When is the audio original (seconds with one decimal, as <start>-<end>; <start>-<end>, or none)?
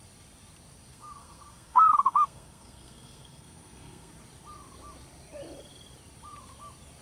0.0-0.9; 4.1-7.0